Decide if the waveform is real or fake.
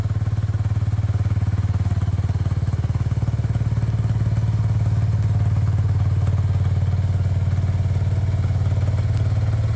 real